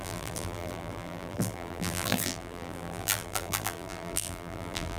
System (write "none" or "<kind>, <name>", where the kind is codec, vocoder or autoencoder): vocoder, BigVGAN v2